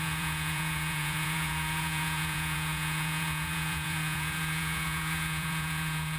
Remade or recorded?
remade